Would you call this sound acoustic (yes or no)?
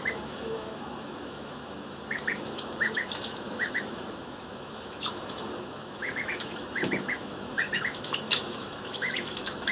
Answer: no